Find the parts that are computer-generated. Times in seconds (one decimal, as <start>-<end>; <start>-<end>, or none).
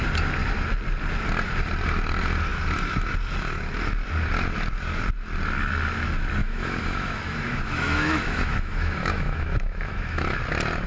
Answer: 6.4-10.4